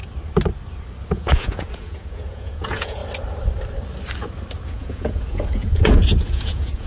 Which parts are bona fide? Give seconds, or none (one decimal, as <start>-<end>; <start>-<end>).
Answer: 0.0-1.1; 3.0-4.7